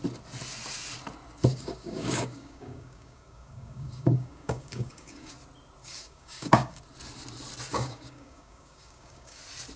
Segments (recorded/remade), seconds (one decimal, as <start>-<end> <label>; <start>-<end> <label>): 0.0-1.5 recorded; 1.5-5.3 remade; 5.3-5.8 recorded; 5.8-6.8 remade; 6.8-7.7 recorded; 7.7-9.4 remade; 9.4-9.8 recorded